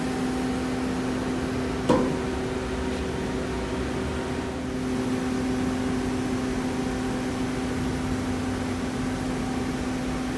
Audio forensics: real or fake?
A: real